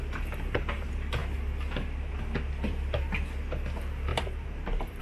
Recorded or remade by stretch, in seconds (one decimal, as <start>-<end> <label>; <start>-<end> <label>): 0.0-4.1 recorded; 4.1-5.0 remade